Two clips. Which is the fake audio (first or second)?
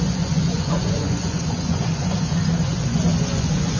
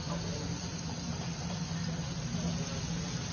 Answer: first